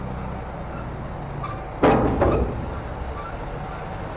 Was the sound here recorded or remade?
recorded